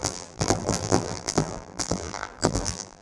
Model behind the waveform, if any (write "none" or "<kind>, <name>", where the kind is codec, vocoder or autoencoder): vocoder, BigVGAN v2